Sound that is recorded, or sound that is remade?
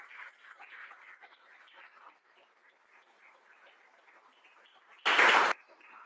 recorded